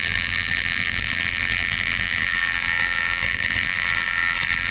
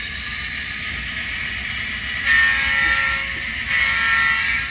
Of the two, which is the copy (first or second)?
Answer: first